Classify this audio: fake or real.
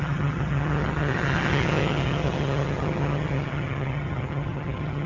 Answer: fake